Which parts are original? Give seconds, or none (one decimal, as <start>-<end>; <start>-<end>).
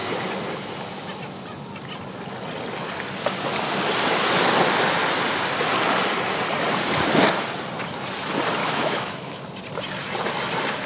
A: 0.0-8.6; 9.4-10.9